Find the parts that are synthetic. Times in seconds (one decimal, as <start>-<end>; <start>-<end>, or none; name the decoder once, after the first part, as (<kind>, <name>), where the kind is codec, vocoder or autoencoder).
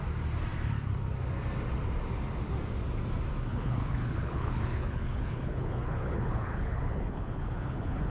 3.5-8.1 (codec, HILCodec)